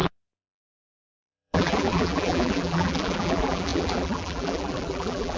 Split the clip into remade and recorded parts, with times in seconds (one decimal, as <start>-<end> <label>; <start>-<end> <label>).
0.0-5.4 remade